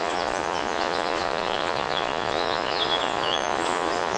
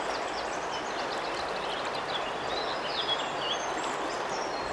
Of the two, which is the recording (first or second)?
second